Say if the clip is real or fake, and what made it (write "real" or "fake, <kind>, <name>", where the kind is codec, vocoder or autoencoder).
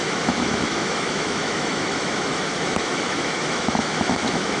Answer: fake, autoencoder, DAC-VAE